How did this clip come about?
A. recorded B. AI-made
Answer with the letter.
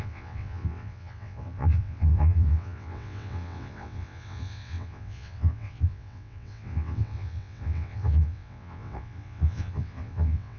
B